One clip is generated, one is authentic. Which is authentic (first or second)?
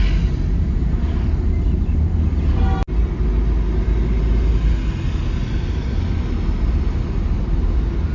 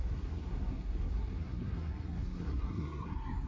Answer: first